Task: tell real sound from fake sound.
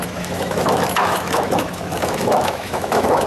fake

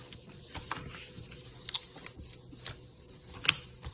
real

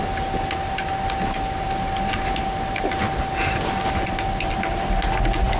real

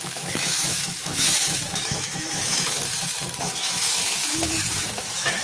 fake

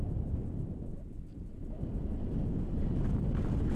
real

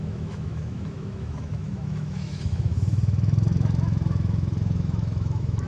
fake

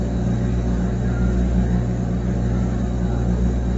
real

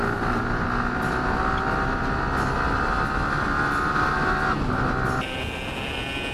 real